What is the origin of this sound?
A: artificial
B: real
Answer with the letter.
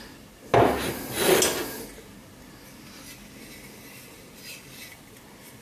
B